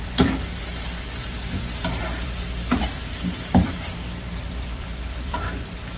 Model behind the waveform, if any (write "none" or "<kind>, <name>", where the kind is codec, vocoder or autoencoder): vocoder, BigVGAN v2